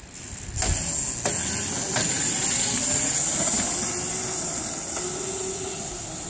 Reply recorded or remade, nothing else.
recorded